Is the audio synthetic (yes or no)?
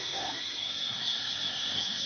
yes